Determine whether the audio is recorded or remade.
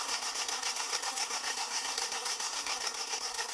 remade